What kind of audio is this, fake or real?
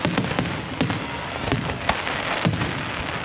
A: real